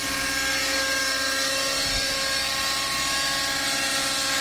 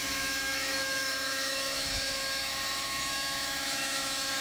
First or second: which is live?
first